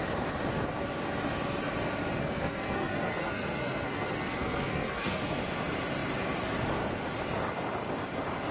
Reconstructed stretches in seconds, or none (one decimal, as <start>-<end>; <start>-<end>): 2.2-5.4